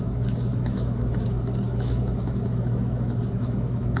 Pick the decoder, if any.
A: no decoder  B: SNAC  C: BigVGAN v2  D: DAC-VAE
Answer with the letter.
D